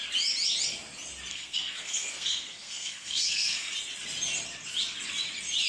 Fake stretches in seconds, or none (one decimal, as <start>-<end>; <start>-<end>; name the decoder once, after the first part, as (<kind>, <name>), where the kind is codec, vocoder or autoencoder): 1.3-3.7 (codec, SNAC)